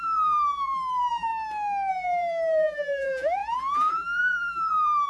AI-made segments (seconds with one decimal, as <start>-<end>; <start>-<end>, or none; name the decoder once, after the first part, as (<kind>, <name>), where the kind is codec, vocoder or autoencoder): 0.0-1.3 (vocoder, BigVGAN v2); 1.9-5.1